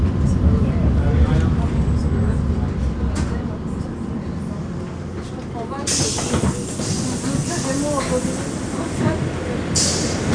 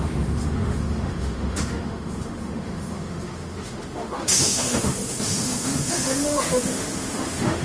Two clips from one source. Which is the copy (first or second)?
second